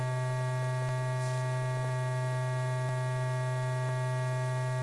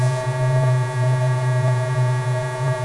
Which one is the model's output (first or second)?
second